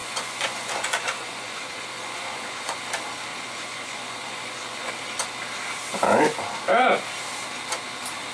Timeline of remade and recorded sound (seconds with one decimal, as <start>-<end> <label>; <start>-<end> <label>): 0.0-2.8 remade; 2.8-3.3 recorded; 3.3-4.9 remade; 4.9-8.3 recorded